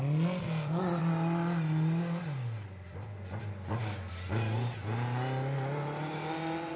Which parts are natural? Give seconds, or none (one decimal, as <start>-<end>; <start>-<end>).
0.0-6.8